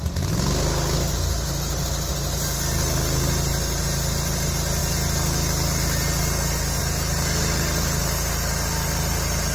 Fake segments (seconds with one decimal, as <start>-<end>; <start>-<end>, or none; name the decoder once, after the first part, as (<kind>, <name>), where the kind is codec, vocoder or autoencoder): none